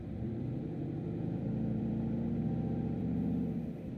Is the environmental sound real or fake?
fake